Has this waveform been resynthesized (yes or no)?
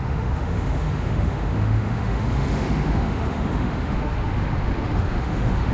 yes